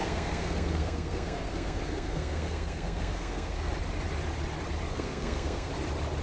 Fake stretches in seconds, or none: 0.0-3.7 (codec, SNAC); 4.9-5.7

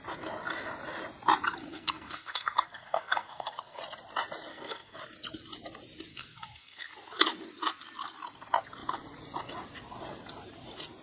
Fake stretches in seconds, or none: 1.7-3.8 (codec, SNAC); 4.5-5.0; 6.1-6.9